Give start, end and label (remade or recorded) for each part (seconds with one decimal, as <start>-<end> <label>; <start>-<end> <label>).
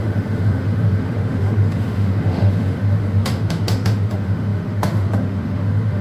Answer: 0.0-6.0 remade